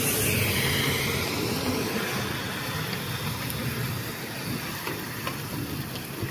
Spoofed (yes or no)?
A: no